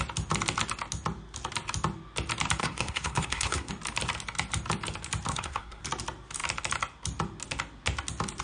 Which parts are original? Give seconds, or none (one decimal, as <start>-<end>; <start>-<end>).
0.0-2.6; 3.7-5.3; 5.8-8.4